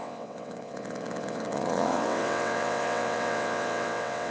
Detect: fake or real fake